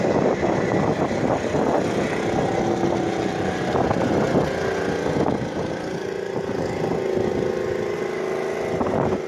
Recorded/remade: recorded